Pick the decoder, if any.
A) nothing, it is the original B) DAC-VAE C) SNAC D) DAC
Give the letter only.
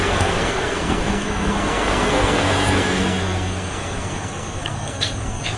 C